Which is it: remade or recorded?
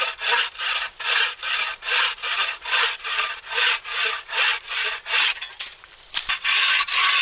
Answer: recorded